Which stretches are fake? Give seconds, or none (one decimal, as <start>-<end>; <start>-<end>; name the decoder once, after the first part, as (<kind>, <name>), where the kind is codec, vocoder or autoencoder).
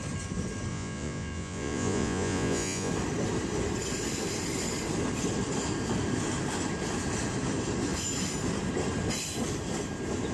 0.7-2.9 (vocoder, Vocos)